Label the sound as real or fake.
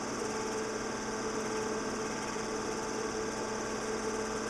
real